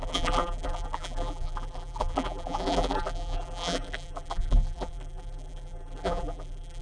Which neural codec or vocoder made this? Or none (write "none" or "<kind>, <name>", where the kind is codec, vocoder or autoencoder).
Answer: vocoder, BigVGAN v2